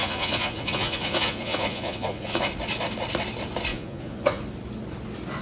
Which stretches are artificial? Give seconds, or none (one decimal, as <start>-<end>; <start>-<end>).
0.0-2.4; 3.7-4.4